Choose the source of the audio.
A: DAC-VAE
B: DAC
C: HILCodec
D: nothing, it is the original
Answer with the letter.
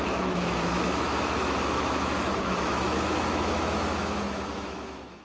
A